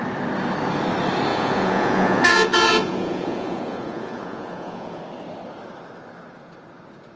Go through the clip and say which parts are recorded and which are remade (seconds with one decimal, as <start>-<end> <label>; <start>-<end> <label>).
0.0-1.3 recorded; 1.3-5.0 remade; 5.0-7.2 recorded